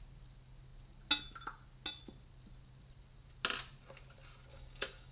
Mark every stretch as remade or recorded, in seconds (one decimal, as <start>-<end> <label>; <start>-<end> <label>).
0.0-4.5 recorded; 4.5-5.1 remade